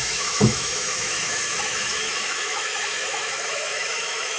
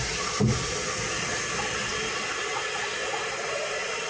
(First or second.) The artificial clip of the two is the first